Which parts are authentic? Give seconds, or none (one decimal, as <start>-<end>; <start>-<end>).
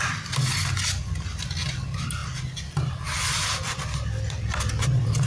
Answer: 0.0-5.3